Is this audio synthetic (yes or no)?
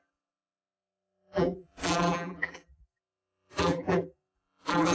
yes